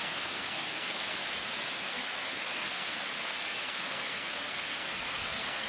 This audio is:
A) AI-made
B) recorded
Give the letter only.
A